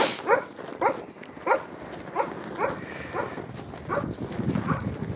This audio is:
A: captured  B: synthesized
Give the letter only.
A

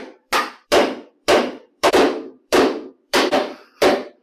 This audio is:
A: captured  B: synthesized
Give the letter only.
B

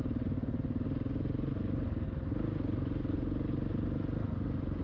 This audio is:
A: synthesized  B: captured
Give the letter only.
B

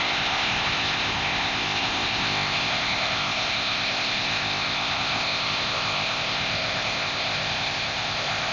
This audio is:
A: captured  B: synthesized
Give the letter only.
B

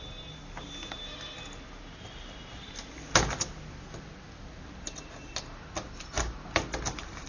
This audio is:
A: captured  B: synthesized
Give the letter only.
A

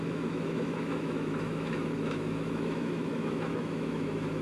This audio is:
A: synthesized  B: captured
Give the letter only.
A